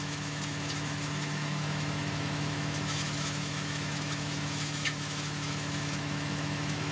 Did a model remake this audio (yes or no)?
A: yes